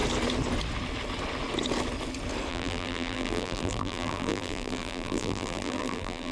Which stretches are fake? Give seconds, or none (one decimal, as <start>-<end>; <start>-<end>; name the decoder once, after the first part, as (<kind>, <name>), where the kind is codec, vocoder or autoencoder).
2.5-6.3 (vocoder, BigVGAN v2)